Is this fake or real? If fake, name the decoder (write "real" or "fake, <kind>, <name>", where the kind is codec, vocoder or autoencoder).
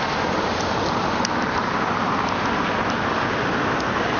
real